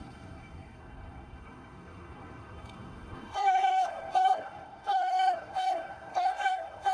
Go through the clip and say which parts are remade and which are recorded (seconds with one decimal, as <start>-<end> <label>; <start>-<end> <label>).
0.0-6.9 remade